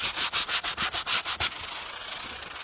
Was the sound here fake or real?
real